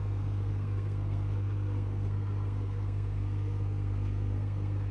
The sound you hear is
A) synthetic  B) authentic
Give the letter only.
A